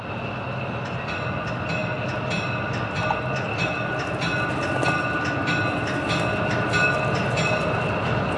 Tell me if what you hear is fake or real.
real